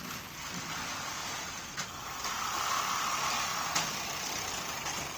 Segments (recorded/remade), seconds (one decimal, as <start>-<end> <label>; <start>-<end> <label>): 0.0-5.2 recorded